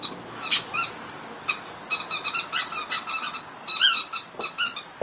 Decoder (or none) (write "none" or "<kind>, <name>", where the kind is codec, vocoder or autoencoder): none